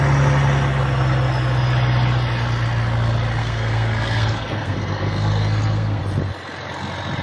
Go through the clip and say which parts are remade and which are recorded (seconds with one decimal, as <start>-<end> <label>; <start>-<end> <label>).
0.0-3.4 recorded; 3.4-6.0 remade; 6.0-7.2 recorded